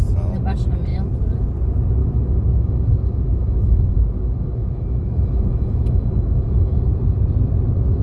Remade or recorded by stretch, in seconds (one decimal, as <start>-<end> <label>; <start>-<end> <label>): 0.0-2.0 recorded; 2.0-6.8 remade; 6.8-8.0 recorded